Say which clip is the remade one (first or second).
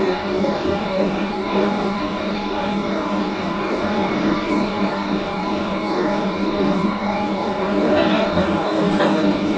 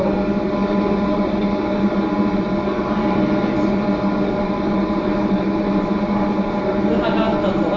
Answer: first